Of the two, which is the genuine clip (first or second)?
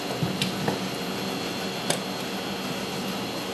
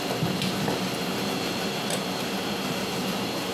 first